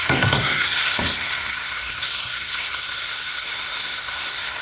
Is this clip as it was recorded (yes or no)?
no